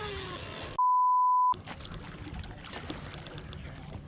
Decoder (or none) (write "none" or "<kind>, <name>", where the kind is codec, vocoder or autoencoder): none